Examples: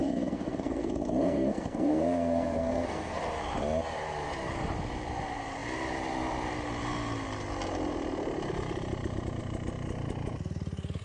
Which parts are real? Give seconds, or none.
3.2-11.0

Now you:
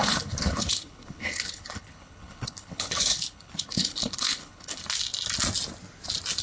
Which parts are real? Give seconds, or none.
4.8-6.4

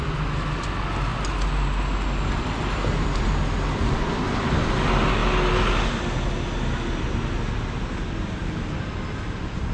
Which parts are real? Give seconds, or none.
0.0-9.7

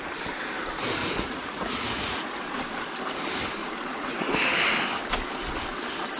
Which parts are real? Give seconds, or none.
0.0-1.0; 2.6-3.6; 4.3-6.2

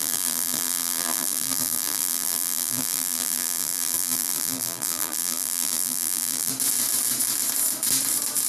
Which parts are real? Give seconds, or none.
6.5-8.5